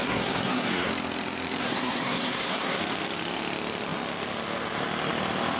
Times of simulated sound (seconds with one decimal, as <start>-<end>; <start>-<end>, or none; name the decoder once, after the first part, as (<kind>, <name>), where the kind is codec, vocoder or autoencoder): 0.0-0.9 (codec, SNAC); 1.6-2.8